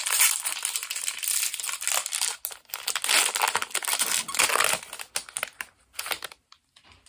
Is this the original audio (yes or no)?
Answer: yes